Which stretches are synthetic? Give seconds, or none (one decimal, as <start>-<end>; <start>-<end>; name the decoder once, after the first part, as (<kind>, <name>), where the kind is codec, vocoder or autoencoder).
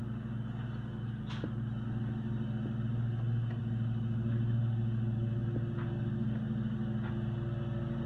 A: none